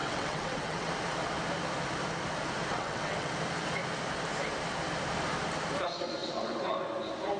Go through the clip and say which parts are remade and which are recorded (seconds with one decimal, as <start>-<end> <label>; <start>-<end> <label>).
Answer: 0.0-0.9 remade; 0.9-2.7 recorded; 2.7-3.3 remade; 3.3-6.2 recorded; 6.2-6.8 remade; 6.8-7.4 recorded